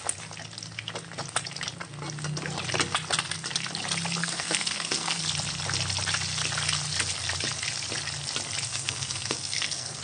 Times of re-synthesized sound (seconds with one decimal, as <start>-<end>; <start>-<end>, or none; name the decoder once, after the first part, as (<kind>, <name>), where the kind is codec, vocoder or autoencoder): 4.2-5.2 (codec, SNAC); 8.7-10.0